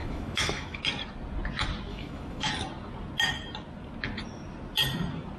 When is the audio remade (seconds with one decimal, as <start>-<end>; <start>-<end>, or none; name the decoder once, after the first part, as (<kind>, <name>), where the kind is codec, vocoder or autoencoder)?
0.0-0.8 (autoencoder, DAC-VAE); 1.9-2.5